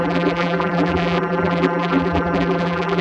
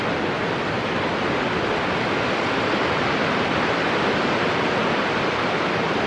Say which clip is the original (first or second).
second